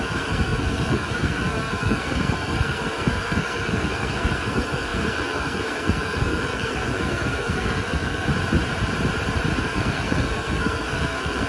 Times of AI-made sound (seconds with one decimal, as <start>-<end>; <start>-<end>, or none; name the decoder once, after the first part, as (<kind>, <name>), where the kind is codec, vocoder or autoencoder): 0.0-8.3 (codec, SNAC); 9.6-11.5